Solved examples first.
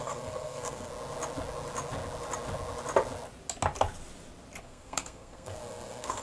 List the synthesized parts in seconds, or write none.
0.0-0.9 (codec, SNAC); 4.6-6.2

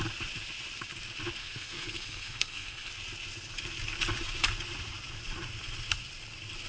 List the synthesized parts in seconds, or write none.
1.4-2.9 (codec, SNAC)